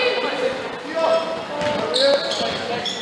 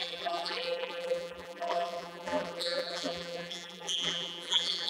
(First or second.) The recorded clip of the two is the first